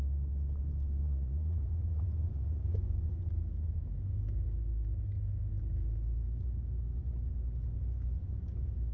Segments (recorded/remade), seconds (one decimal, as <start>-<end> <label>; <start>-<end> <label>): 0.0-1.0 recorded; 1.0-3.3 remade; 3.3-8.9 recorded